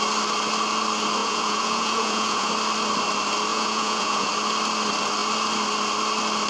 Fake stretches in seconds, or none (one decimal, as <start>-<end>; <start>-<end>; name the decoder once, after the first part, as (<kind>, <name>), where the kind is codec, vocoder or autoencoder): 1.2-2.5 (vocoder, Vocos); 3.5-4.3